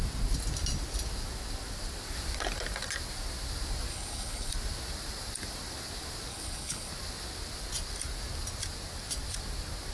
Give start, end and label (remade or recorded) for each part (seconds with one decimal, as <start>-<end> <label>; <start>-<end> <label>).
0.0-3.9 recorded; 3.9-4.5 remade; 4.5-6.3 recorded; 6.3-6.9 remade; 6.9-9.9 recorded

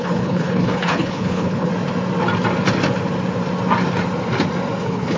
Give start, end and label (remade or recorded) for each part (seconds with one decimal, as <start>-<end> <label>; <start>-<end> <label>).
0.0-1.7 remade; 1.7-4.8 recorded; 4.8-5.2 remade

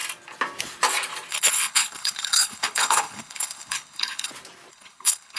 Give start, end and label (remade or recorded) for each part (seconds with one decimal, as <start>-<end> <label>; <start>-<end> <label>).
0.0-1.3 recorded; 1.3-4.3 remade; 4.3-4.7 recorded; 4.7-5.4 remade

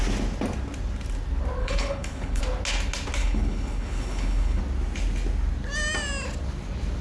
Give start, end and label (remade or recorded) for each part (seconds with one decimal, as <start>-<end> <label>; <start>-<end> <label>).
0.0-1.6 recorded; 1.6-2.4 remade; 2.4-3.2 recorded; 3.2-4.6 remade; 4.6-7.0 recorded